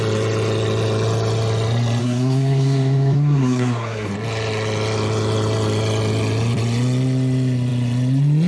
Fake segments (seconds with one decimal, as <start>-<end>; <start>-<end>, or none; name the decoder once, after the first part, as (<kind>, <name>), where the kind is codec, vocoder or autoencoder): 2.0-4.1 (codec, SNAC)